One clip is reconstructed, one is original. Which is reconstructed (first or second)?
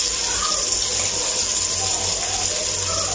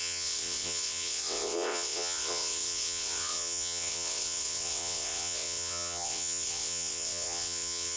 second